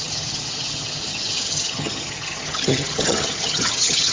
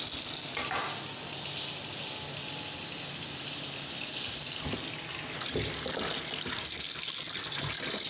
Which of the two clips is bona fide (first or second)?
second